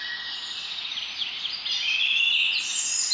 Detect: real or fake real